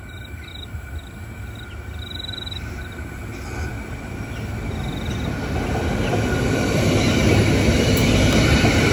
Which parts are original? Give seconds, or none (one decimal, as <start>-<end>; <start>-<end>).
0.0-8.9